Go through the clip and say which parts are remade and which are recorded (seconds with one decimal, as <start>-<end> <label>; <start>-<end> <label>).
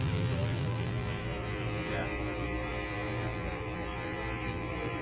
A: 0.0-5.0 remade